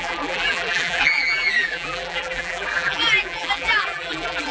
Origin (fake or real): fake